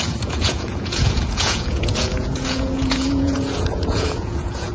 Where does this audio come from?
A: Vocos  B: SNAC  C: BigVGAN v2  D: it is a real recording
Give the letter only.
A